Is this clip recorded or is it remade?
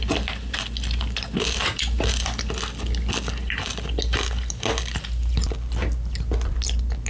recorded